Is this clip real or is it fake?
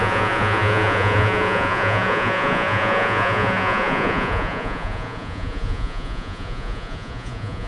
fake